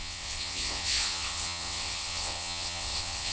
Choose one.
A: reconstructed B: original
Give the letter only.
A